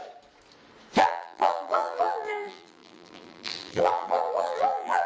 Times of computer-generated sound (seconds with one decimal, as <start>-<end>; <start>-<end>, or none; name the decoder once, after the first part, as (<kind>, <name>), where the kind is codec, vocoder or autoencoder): 1.0-5.1 (vocoder, BigVGAN v2)

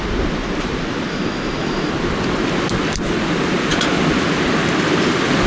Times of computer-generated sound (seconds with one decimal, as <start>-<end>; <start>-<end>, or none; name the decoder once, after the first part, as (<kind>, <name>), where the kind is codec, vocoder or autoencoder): 1.1-1.9 (autoencoder, DAC-VAE)

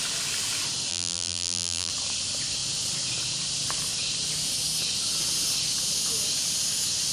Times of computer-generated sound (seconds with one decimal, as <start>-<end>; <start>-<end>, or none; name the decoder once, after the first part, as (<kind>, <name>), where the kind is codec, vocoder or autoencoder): 0.9-1.9 (vocoder, BigVGAN v2)

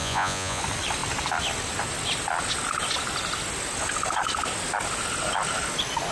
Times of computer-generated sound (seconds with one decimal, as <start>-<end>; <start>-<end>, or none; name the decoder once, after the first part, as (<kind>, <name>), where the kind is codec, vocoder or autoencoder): 0.0-0.6 (vocoder, Vocos)

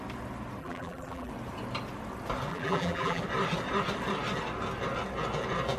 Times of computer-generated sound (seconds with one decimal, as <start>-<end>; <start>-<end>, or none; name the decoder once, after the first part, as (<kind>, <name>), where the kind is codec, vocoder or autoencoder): 0.6-1.3 (vocoder, BigVGAN v2); 2.5-3.2

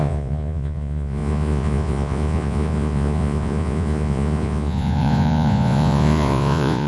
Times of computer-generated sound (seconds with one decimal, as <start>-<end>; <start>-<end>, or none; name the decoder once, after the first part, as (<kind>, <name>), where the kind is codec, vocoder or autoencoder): 0.0-6.9 (vocoder, Vocos)

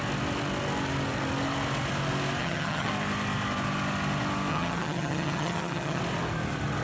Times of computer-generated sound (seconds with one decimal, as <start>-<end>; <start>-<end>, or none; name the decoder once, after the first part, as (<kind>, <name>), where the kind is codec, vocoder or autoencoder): 2.4-2.9 (vocoder, HiFi-GAN); 4.5-6.0